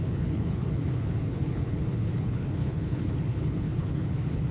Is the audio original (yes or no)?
no